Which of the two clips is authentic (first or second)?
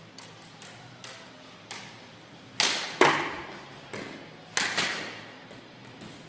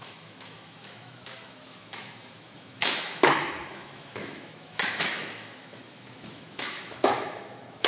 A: first